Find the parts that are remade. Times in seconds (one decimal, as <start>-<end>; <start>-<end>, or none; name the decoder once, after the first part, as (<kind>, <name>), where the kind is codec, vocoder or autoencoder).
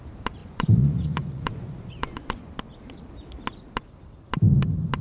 0.4-2.5 (vocoder, Vocos)